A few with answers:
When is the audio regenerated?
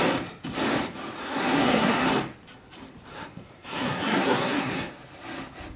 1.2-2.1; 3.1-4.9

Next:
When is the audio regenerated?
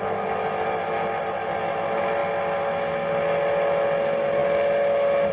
none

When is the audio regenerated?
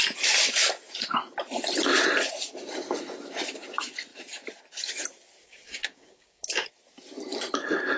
5.4-6.7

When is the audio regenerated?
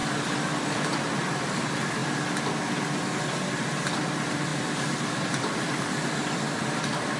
0.0-2.0; 3.9-4.5; 5.2-7.2